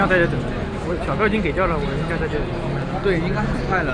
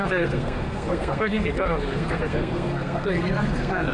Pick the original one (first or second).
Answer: first